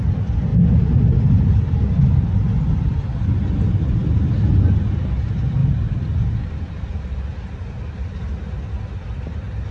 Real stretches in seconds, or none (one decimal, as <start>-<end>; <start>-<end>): 0.0-9.7